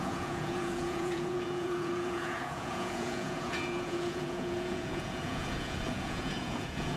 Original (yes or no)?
no